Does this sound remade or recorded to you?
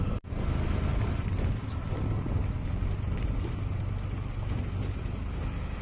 recorded